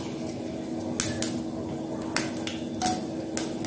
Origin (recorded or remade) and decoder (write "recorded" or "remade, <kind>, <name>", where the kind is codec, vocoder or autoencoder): recorded